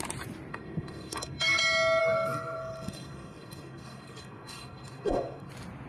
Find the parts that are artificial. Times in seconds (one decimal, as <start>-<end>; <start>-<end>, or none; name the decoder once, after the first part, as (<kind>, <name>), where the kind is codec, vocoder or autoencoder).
0.5-1.6 (codec, SNAC); 2.0-5.5